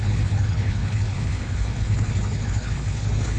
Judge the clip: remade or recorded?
remade